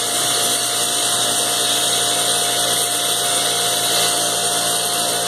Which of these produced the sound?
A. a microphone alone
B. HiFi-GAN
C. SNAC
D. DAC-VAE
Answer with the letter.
A